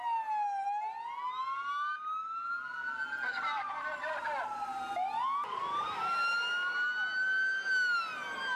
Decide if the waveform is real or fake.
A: real